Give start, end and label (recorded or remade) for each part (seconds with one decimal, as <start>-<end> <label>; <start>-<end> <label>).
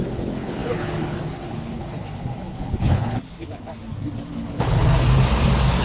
0.0-3.7 remade; 3.7-4.3 recorded; 4.3-4.8 remade; 4.8-5.8 recorded